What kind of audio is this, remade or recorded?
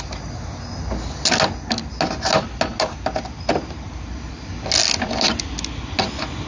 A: recorded